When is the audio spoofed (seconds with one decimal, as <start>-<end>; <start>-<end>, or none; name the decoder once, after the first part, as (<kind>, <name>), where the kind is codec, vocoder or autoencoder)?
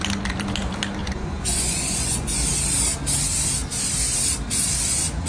1.0-2.4 (vocoder, Vocos)